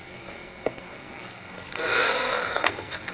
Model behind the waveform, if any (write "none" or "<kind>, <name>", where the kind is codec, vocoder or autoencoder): codec, SNAC